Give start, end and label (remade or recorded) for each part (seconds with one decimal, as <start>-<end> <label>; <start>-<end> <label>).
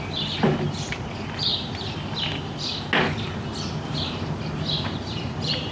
0.0-5.7 recorded